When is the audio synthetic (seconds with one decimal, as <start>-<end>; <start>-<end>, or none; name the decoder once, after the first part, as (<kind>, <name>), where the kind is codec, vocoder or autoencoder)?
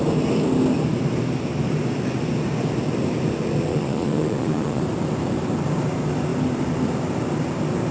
3.7-4.8 (vocoder, Vocos)